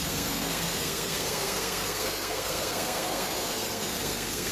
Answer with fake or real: fake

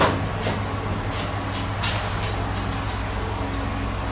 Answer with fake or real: real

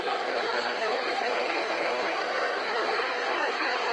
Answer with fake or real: fake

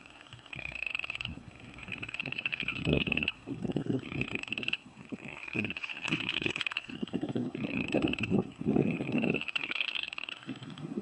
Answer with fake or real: fake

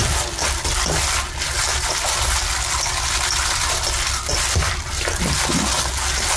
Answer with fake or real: real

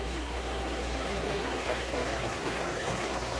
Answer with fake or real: fake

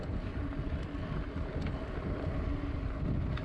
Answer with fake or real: real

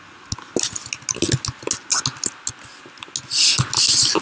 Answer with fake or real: real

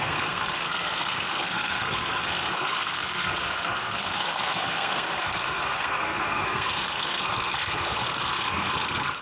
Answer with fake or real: fake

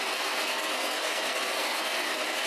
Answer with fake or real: fake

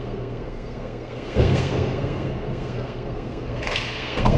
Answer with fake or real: fake